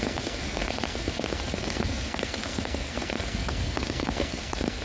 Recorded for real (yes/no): no